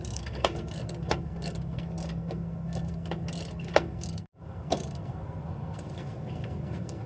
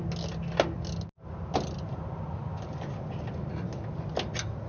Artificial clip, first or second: first